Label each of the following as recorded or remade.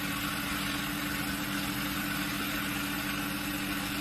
recorded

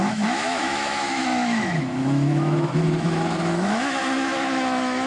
remade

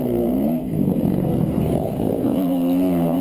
remade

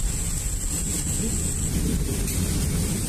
recorded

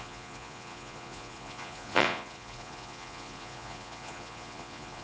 remade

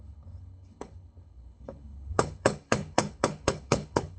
remade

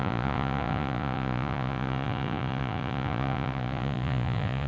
remade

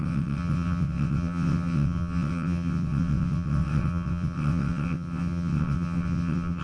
remade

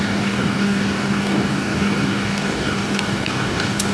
remade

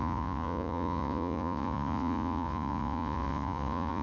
remade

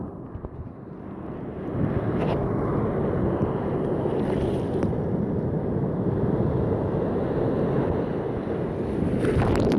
recorded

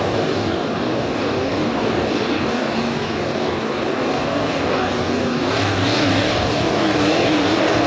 remade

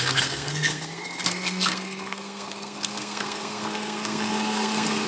remade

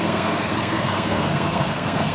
remade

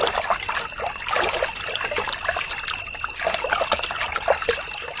recorded